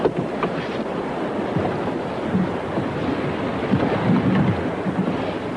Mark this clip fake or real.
real